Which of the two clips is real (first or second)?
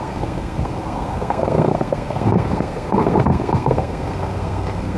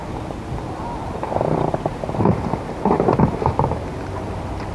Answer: second